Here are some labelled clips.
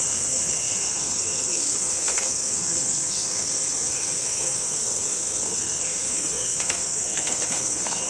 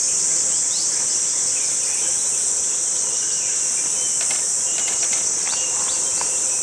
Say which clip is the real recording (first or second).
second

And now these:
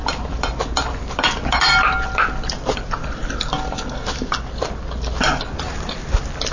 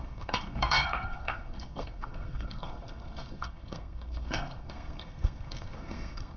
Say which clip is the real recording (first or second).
first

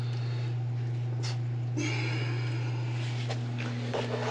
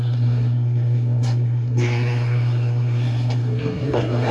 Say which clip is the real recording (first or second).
first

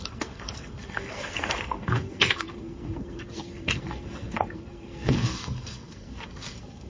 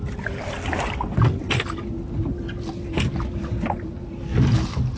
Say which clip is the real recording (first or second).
second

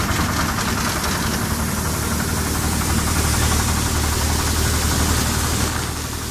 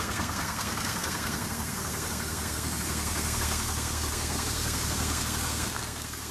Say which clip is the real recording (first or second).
first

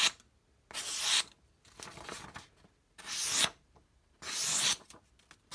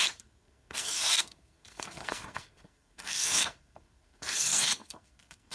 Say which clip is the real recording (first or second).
first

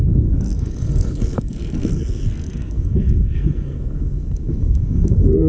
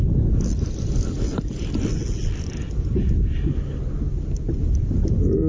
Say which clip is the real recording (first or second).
second